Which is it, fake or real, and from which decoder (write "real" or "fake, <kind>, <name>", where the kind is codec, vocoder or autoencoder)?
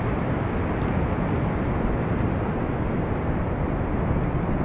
real